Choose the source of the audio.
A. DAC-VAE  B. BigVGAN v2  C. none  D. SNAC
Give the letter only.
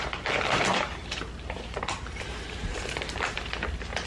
B